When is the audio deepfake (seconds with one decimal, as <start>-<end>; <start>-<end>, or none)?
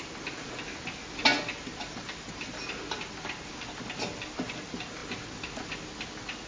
none